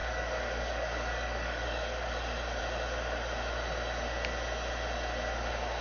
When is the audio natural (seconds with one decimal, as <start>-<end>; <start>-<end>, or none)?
2.1-5.8